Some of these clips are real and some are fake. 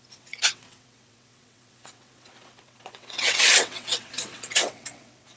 fake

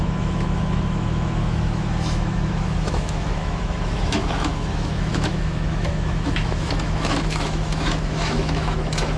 fake